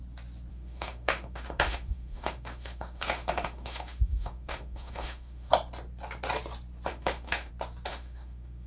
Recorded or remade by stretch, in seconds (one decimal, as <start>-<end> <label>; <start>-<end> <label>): 0.0-0.5 recorded; 0.5-5.5 remade; 5.5-6.9 recorded; 6.9-7.5 remade; 7.5-7.9 recorded; 7.9-8.7 remade